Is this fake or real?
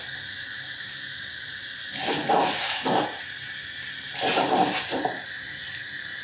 real